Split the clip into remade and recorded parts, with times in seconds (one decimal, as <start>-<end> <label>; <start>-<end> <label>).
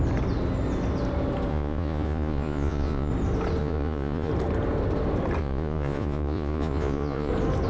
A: 0.0-1.5 recorded; 1.5-3.1 remade; 3.1-3.6 recorded; 3.6-4.3 remade; 4.3-5.4 recorded; 5.4-7.3 remade; 7.3-7.7 recorded